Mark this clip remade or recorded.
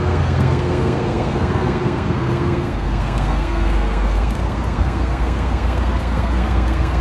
remade